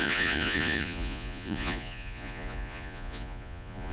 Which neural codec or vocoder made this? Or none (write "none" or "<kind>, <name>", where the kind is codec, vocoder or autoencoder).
vocoder, Vocos